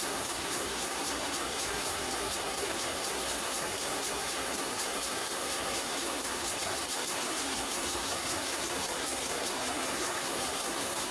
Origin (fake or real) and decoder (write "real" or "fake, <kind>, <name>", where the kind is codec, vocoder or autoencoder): fake, codec, SNAC